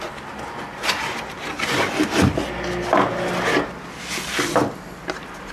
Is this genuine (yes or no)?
yes